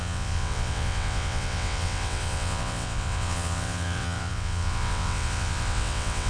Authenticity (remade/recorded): remade